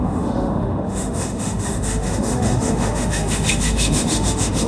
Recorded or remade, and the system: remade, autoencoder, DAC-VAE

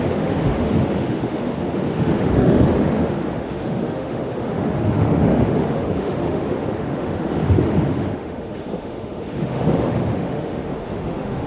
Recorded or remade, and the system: remade, autoencoder, DAC-VAE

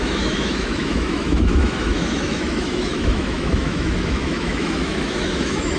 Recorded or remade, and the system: remade, autoencoder, DAC-VAE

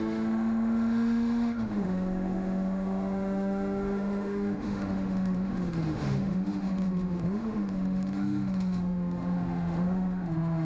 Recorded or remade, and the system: remade, autoencoder, DAC-VAE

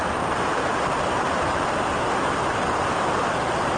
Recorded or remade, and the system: recorded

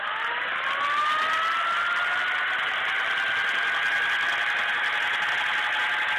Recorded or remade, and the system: recorded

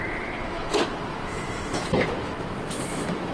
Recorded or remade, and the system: remade, autoencoder, DAC-VAE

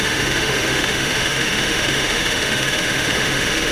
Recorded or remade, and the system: remade, autoencoder, DAC-VAE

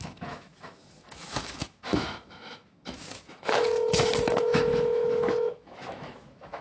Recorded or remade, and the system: remade, autoencoder, DAC-VAE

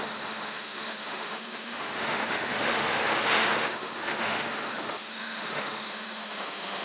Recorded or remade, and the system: remade, autoencoder, DAC-VAE